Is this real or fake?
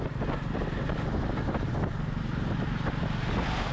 real